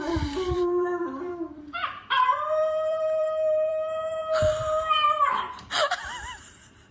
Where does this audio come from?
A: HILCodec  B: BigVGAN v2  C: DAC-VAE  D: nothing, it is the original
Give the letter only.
B